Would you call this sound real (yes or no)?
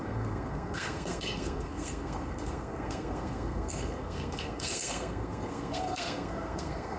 no